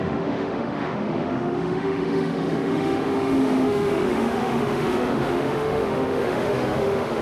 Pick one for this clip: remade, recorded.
remade